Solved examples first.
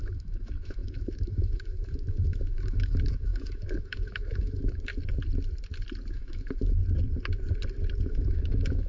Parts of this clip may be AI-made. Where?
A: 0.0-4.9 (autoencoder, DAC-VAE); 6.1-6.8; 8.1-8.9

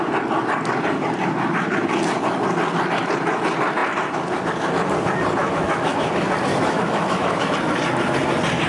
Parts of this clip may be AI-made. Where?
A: 5.4-6.1 (autoencoder, DAC-VAE); 6.5-7.5